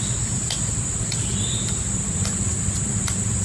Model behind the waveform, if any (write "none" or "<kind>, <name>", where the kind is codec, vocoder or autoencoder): vocoder, BigVGAN v2